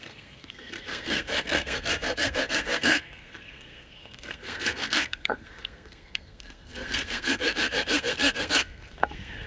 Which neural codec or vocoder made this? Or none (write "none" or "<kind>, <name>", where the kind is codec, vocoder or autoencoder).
codec, SNAC